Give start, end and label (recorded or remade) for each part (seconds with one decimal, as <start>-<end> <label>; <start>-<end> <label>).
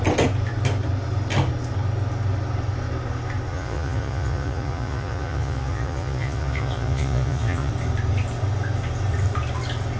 0.0-3.5 recorded; 3.5-7.7 remade; 7.7-10.0 recorded